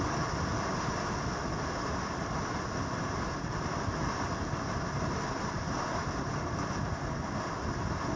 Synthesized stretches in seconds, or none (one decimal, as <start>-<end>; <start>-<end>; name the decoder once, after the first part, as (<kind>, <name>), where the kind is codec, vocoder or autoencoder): 6.0-6.7 (vocoder, BigVGAN v2)

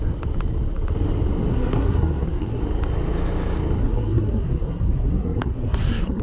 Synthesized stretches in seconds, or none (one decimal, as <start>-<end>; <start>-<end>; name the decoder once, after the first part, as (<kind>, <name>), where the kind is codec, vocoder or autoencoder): 1.5-2.6 (codec, SNAC); 3.8-6.2

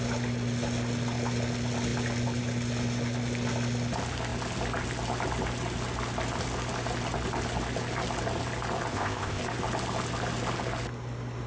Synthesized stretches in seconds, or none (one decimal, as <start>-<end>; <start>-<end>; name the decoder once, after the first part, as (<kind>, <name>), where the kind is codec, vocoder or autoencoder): 8.9-9.4 (codec, ZipCodec)

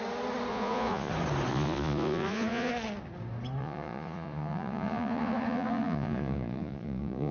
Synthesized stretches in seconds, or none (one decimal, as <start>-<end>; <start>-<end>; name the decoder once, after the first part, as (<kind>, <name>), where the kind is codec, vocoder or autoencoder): 0.5-1.1 (vocoder, Vocos); 1.5-2.7; 3.6-7.3

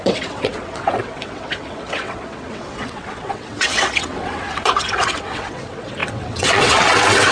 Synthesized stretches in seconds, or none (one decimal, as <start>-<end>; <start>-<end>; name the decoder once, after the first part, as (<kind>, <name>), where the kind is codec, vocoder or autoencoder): 0.0-7.3 (vocoder, WaveNeXt)

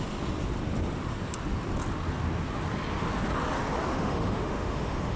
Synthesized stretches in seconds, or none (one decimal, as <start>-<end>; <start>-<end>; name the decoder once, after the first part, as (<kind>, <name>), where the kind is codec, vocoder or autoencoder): 3.9-5.2 (autoencoder, DAC-VAE)